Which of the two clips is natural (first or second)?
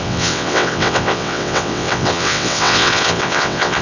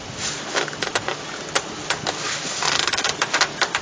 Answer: second